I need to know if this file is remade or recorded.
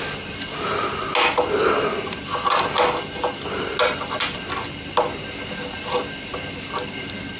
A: recorded